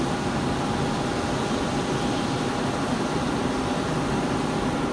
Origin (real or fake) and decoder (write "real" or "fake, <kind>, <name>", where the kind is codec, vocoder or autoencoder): real